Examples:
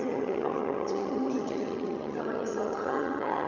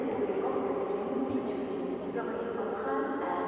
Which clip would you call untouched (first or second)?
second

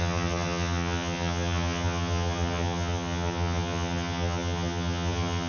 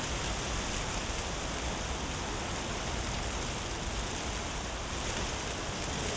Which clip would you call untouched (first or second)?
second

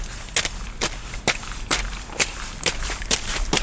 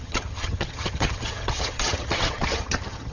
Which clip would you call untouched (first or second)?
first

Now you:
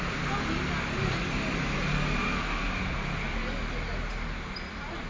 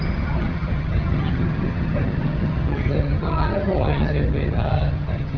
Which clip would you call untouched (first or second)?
first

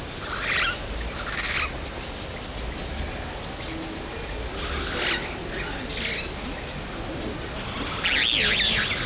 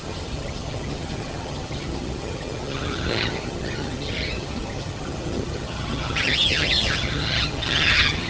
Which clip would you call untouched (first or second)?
first